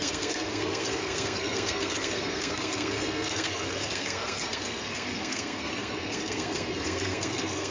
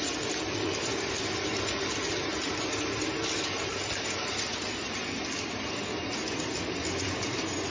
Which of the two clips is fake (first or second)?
first